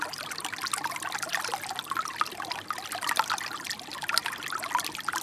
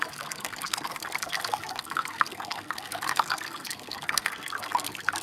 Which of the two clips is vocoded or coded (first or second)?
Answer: second